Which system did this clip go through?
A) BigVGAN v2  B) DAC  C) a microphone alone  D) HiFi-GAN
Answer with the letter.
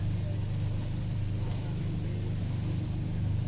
C